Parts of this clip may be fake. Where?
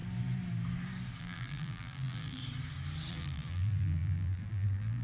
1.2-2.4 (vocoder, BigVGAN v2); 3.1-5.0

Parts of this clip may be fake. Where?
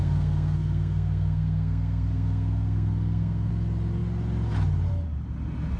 0.0-3.5 (codec, SNAC)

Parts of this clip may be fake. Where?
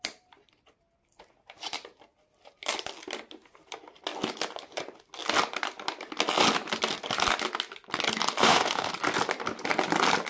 8.4-8.9 (autoencoder, DAC-VAE)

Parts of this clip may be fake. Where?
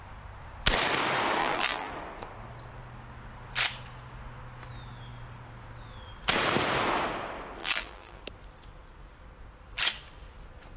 1.4-1.9 (vocoder, BigVGAN v2); 7.6-8.2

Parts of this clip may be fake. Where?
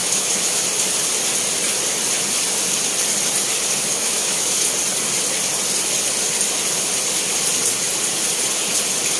0.0-0.6 (autoencoder, DAC-VAE); 3.8-4.7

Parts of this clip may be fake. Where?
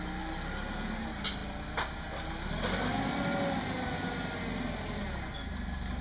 none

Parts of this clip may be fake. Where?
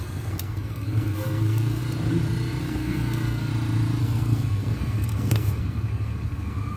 0.0-1.8 (codec, SNAC); 2.6-3.5; 4.0-6.8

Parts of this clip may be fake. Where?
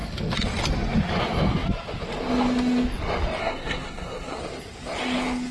3.4-4.4 (codec, SNAC)